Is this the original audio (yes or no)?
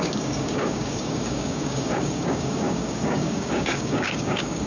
no